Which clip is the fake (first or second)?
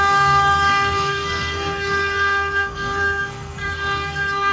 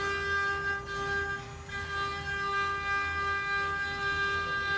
first